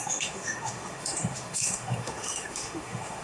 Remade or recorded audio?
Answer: remade